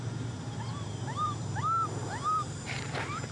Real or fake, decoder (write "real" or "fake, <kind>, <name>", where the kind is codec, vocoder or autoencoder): fake, vocoder, BigVGAN v2